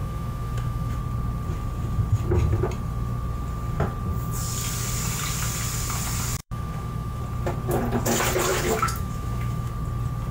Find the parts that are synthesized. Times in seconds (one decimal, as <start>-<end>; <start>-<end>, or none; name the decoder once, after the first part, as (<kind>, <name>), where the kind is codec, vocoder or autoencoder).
0.0-1.0 (autoencoder, DAC-VAE); 6.4-7.2; 8.5-9.7